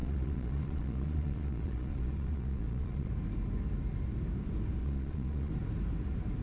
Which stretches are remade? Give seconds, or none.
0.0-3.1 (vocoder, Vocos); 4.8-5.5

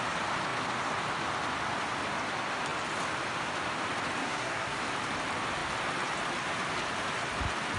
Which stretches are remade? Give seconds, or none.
4.2-4.8 (codec, SNAC)

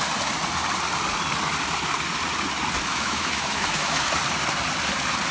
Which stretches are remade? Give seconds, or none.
2.9-4.1 (autoencoder, DAC-VAE)

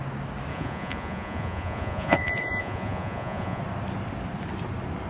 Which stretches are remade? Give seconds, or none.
0.5-3.6 (vocoder, Vocos)